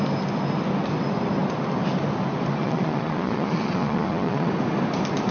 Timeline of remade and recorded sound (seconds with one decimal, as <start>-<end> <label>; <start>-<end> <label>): 0.0-2.6 recorded; 2.6-4.5 remade; 4.5-5.3 recorded